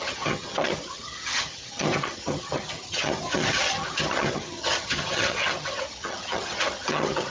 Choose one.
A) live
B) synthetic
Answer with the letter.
B